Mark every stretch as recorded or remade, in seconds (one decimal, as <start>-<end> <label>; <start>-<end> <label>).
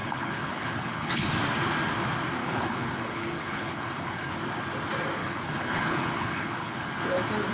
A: 0.0-1.2 remade; 1.2-2.4 recorded; 2.4-4.4 remade; 4.4-5.2 recorded; 5.2-6.9 remade; 6.9-7.5 recorded